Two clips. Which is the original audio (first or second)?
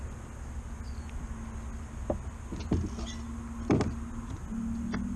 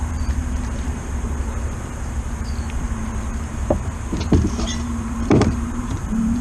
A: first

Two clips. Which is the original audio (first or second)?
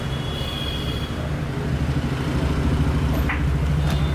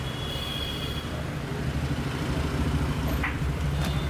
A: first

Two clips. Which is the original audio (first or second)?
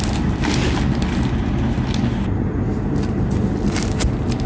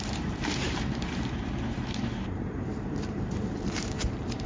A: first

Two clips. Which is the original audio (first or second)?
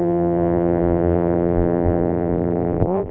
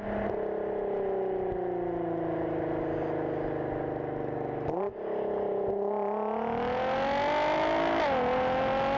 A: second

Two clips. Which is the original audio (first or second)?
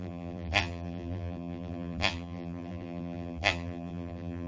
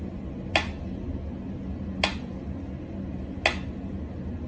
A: second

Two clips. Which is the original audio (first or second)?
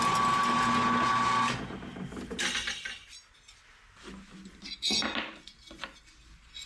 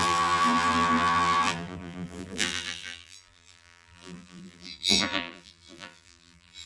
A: first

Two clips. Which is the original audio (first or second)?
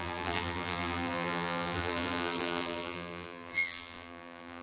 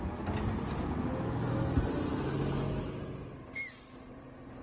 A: second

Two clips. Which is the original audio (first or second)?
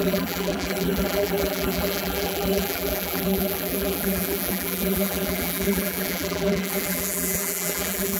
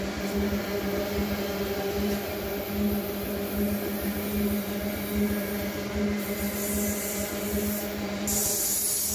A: second